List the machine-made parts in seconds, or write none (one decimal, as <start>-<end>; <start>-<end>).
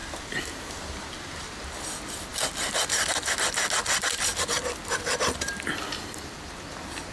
0.0-1.1